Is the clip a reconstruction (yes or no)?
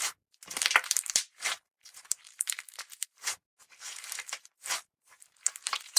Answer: yes